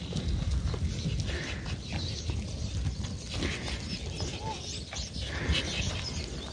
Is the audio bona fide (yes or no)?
yes